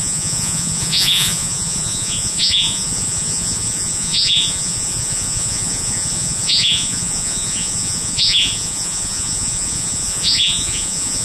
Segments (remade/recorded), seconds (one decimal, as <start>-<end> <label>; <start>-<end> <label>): 0.0-11.2 remade